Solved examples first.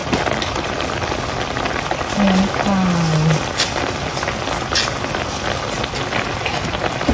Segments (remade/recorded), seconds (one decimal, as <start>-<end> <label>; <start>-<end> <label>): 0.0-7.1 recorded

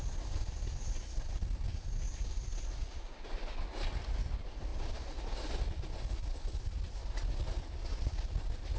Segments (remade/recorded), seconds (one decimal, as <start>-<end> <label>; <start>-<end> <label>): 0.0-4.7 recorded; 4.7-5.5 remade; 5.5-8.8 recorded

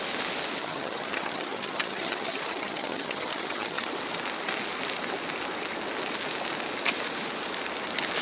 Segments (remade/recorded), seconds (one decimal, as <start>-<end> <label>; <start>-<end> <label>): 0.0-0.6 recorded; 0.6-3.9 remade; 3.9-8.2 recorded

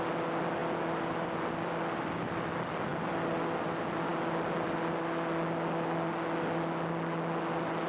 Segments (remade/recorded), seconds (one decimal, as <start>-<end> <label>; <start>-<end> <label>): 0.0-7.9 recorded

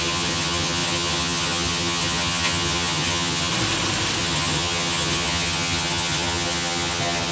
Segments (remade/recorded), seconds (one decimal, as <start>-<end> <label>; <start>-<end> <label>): 0.0-3.5 remade; 3.5-4.2 recorded; 4.2-7.3 remade

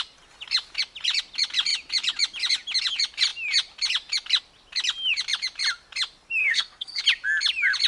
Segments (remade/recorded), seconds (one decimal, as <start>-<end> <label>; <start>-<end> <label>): 0.0-6.4 recorded; 6.4-7.0 remade; 7.0-7.9 recorded

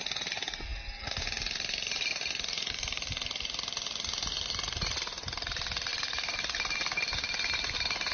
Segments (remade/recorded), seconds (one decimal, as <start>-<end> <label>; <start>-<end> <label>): 0.0-8.1 recorded

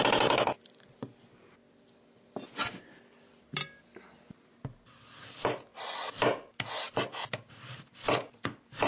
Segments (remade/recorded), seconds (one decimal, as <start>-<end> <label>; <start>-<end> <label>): 0.0-8.9 recorded